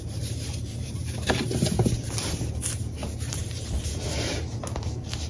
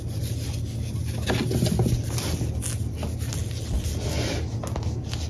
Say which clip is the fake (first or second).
first